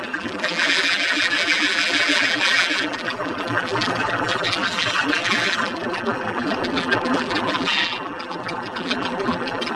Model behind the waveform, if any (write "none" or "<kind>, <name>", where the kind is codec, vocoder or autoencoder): vocoder, BigVGAN v2